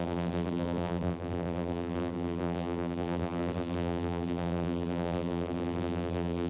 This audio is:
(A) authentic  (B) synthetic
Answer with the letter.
B